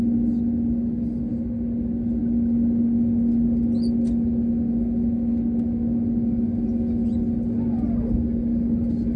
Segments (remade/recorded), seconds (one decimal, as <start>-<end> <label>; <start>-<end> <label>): 0.0-9.2 recorded